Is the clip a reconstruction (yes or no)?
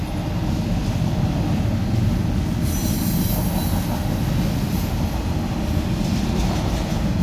no